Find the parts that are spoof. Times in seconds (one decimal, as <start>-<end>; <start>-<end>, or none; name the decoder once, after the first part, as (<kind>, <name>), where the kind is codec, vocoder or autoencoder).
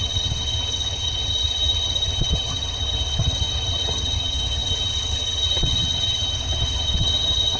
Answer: 0.0-7.6 (vocoder, HiFi-GAN)